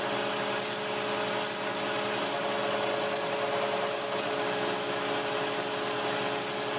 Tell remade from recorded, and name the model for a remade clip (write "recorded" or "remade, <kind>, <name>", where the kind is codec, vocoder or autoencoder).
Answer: recorded